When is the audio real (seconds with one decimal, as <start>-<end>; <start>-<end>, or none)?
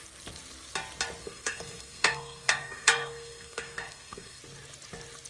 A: 0.0-1.2; 4.4-5.3